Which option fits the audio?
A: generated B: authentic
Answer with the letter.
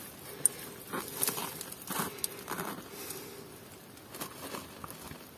B